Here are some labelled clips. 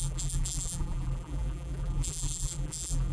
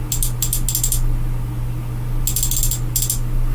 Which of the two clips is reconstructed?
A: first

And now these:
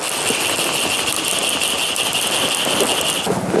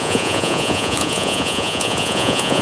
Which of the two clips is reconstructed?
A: second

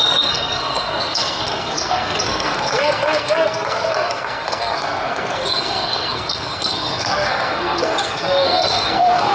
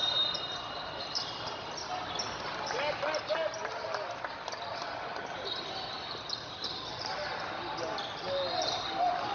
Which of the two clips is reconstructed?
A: first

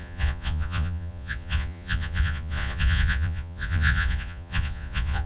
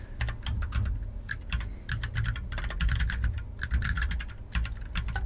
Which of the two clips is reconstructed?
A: first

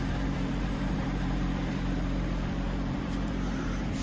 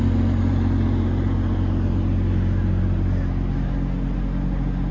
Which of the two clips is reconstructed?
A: first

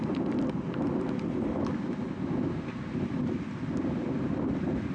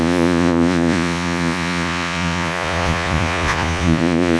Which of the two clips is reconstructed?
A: second